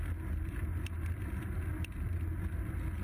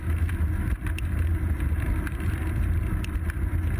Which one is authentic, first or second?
first